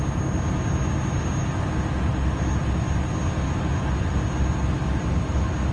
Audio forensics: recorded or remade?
recorded